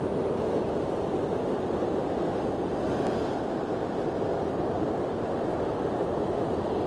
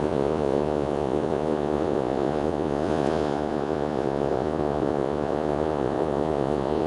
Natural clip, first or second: first